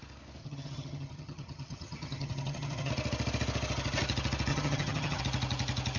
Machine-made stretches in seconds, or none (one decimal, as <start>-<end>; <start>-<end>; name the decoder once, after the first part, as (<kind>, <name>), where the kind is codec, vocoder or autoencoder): 0.4-2.9 (vocoder, HiFi-GAN); 4.5-5.2